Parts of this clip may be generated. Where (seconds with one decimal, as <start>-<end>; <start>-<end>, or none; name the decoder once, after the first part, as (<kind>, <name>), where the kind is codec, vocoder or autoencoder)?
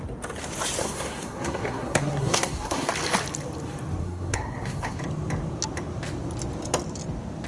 0.8-2.9 (codec, SNAC); 4.0-5.0